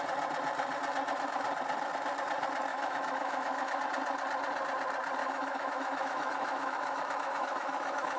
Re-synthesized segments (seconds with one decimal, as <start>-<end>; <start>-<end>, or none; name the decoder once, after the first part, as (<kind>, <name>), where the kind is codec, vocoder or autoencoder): 2.7-3.8 (autoencoder, DAC-VAE); 5.2-8.2